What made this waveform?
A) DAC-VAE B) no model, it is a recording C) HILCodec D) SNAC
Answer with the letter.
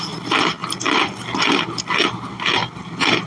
B